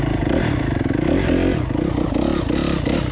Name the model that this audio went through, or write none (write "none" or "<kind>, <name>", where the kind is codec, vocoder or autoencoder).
none